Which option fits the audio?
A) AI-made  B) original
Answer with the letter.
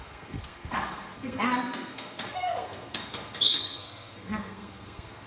A